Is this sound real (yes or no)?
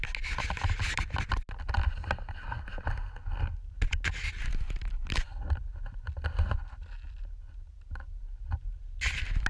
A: yes